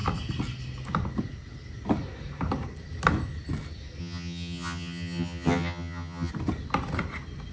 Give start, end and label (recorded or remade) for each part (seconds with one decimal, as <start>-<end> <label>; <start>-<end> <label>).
0.0-4.0 recorded; 4.0-6.3 remade; 6.3-7.5 recorded